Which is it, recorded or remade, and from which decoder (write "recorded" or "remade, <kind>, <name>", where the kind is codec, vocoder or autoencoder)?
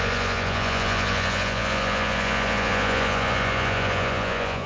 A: remade, vocoder, Vocos